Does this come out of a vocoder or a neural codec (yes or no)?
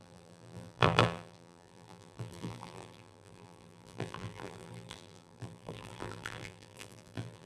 yes